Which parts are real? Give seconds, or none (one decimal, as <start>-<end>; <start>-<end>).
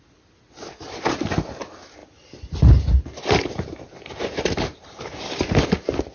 0.0-6.1